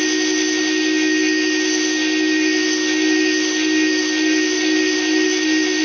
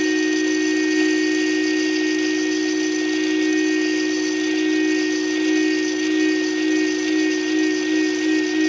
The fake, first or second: first